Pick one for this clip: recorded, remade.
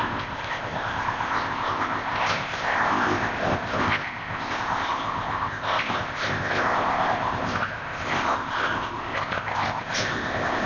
remade